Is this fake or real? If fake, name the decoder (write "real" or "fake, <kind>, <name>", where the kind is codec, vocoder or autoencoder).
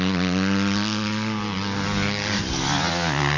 real